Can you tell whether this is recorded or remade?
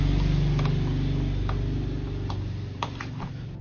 recorded